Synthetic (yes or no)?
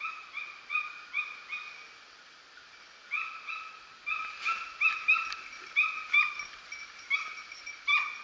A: no